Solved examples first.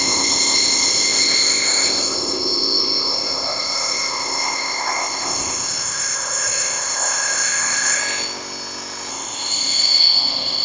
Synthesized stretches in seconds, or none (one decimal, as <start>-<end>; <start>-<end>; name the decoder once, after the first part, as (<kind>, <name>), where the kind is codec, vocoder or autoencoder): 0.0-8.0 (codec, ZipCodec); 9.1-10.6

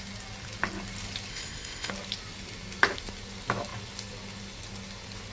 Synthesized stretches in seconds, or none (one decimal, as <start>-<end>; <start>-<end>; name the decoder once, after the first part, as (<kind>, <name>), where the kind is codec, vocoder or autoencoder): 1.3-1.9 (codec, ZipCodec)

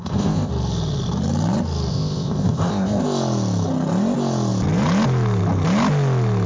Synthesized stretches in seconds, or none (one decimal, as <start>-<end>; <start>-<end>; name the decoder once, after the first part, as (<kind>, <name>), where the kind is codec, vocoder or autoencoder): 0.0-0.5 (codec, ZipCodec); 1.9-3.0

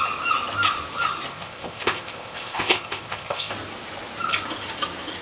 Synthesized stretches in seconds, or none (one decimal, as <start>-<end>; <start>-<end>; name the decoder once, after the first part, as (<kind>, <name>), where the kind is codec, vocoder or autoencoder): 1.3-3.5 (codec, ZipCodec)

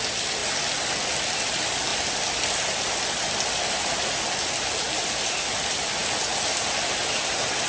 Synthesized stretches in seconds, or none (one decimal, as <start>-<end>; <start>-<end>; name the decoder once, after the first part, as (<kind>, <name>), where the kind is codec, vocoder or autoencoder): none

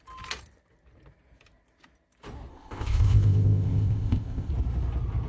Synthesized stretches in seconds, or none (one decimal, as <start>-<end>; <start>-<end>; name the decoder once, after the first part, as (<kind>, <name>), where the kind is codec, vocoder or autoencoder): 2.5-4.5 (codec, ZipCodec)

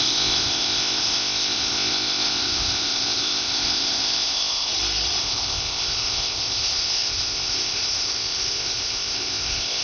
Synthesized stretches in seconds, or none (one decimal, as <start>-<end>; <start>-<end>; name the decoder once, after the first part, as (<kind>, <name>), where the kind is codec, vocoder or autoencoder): 0.0-4.7 (codec, ZipCodec); 5.2-9.8